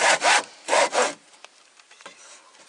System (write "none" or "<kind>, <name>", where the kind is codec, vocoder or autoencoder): vocoder, BigVGAN v2